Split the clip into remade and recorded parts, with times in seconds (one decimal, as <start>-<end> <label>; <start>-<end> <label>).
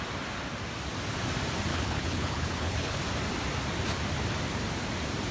0.0-1.7 recorded; 1.7-3.0 remade; 3.0-5.3 recorded